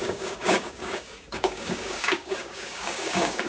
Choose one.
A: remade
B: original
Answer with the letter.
A